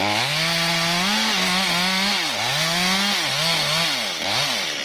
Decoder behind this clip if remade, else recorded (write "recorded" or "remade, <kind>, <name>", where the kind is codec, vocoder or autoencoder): recorded